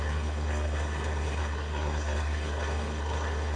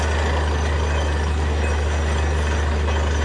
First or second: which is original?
second